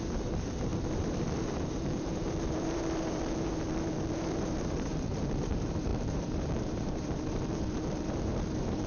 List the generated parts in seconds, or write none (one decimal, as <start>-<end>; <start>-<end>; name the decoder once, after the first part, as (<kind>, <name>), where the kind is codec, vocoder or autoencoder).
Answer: 0.0-8.9 (vocoder, BigVGAN v2)